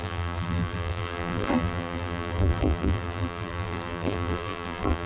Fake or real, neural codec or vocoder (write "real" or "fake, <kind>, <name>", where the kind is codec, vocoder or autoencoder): fake, vocoder, BigVGAN v2